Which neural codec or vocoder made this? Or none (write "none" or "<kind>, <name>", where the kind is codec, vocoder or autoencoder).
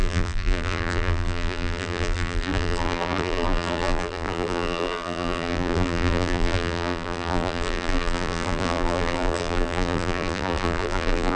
vocoder, BigVGAN v2